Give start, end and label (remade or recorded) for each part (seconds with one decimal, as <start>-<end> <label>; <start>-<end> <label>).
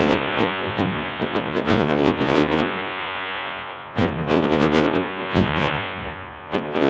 0.0-6.9 remade